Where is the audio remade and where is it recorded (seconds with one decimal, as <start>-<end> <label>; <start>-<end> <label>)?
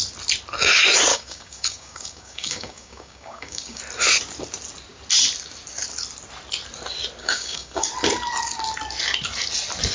0.0-1.1 recorded; 1.1-3.8 remade; 3.8-7.2 recorded; 7.2-7.9 remade; 7.9-9.9 recorded